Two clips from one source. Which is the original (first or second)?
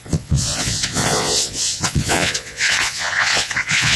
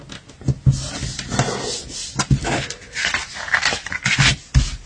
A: second